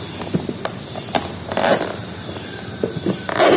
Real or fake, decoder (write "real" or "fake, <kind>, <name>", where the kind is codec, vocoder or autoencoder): real